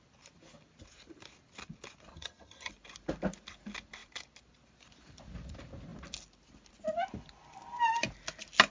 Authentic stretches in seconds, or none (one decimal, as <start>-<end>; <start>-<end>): 0.0-2.1; 2.7-8.7